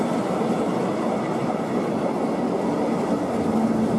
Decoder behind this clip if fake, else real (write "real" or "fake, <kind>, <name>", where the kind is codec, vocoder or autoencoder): real